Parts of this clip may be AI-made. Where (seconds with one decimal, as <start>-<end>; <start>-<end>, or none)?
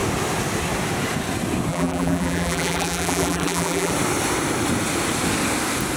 1.7-3.9